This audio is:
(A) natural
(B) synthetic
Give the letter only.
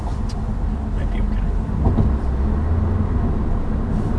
A